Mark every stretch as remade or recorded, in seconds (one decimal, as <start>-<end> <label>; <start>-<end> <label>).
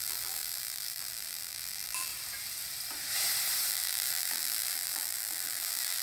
0.0-2.1 remade; 2.1-3.7 recorded; 3.7-6.0 remade